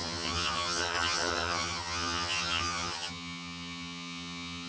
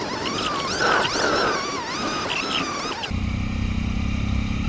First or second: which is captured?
second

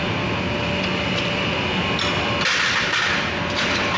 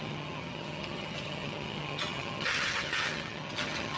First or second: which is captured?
first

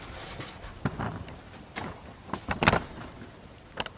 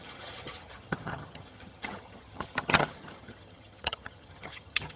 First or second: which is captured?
first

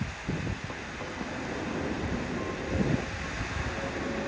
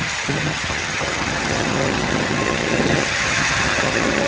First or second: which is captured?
first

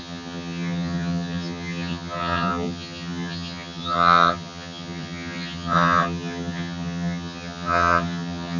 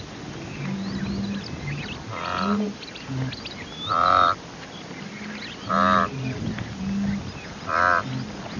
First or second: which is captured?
second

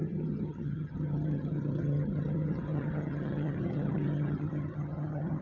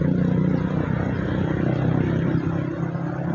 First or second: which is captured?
second